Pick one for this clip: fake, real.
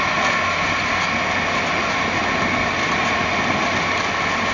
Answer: real